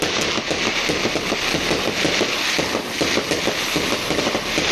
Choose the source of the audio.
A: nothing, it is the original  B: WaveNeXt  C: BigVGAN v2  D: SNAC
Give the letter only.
A